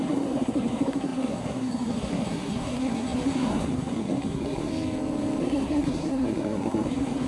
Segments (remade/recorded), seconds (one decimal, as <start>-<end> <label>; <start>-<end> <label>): 0.0-4.7 remade; 4.7-5.4 recorded; 5.4-7.3 remade